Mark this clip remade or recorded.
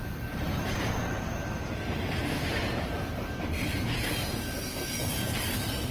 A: remade